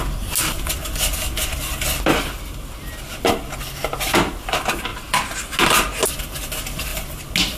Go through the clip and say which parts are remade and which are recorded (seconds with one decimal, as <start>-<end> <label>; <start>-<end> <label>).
0.0-7.6 recorded